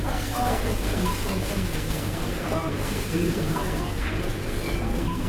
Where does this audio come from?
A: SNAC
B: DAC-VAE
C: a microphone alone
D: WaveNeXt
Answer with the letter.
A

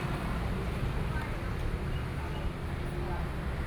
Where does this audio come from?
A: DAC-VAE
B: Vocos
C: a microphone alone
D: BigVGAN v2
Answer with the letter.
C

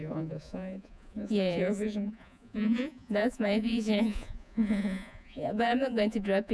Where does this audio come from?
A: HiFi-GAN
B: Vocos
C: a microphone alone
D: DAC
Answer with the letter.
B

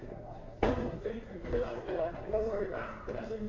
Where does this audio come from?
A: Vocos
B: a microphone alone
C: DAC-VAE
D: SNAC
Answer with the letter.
D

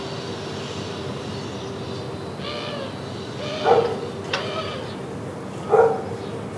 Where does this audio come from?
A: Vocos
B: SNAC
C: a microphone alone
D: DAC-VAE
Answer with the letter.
C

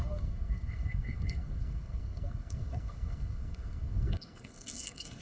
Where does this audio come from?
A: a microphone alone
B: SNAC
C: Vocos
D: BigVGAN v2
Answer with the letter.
B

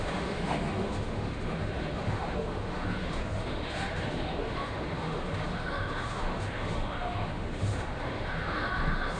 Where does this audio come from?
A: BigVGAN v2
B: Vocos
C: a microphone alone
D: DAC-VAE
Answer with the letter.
D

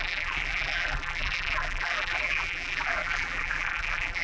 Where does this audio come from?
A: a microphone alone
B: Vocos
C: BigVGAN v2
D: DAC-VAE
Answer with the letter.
C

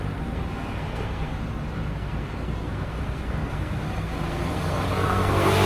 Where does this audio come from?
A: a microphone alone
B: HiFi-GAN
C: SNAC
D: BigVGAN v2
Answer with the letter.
C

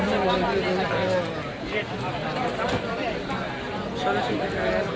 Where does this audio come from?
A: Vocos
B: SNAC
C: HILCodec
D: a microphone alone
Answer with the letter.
D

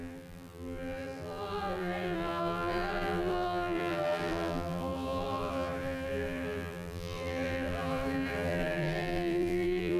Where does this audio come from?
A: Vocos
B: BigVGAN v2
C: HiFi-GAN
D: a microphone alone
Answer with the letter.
B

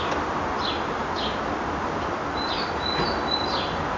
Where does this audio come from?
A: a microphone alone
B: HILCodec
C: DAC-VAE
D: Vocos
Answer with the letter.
A